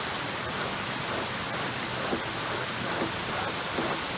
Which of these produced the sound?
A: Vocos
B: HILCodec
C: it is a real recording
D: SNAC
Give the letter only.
C